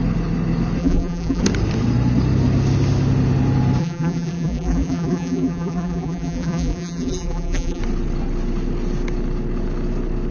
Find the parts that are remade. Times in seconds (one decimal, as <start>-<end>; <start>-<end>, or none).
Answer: 0.8-1.4; 3.8-7.8